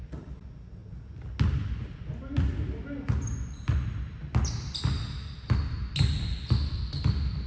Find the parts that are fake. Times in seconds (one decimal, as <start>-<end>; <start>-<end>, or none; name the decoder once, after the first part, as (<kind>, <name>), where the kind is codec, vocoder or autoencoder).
none